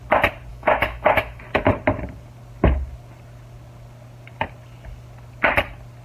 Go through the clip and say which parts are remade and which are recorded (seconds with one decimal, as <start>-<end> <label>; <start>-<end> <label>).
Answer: 0.0-0.5 recorded; 0.5-1.4 remade; 1.4-6.0 recorded